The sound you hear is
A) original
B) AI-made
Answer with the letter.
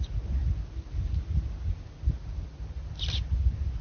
A